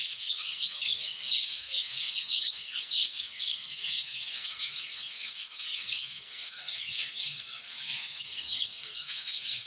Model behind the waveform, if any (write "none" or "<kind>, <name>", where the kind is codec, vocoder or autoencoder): codec, SNAC